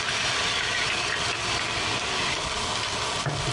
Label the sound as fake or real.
real